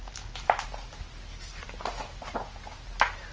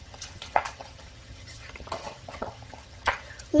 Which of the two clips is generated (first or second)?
second